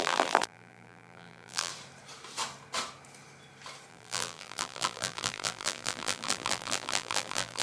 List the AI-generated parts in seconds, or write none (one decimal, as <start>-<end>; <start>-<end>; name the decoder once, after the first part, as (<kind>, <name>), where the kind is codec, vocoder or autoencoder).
0.0-1.7 (vocoder, BigVGAN v2); 3.9-7.6